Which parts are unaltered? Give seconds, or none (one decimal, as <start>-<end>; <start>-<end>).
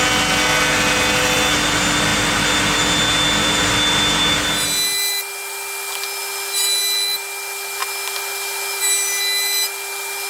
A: 0.0-10.3